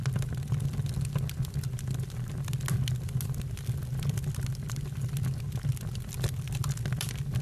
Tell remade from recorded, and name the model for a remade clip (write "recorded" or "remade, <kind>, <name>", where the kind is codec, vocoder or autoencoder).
recorded